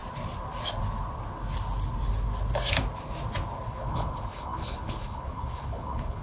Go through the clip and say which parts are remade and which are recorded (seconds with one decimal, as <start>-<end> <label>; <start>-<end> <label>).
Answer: 0.0-3.7 recorded; 3.7-6.2 remade